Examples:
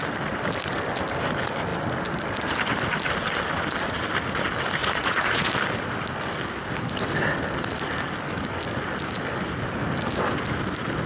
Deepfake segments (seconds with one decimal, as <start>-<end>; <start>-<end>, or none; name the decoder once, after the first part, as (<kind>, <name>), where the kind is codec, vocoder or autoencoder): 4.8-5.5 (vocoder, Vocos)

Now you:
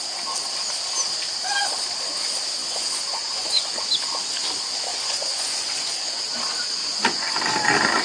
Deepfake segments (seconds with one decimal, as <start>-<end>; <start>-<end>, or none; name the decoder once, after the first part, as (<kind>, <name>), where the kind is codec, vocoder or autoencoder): 2.6-3.8 (vocoder, Vocos); 4.9-6.2; 6.8-7.5

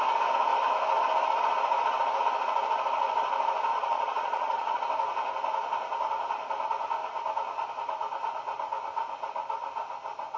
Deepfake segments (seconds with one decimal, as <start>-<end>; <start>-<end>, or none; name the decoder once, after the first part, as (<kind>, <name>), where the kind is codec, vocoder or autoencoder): 3.7-4.8 (vocoder, Vocos)

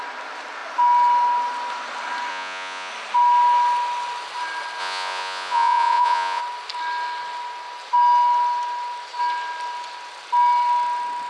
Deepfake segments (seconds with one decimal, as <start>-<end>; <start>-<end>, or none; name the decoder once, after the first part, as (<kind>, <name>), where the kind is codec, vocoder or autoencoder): 2.3-2.9 (vocoder, Vocos); 4.8-6.4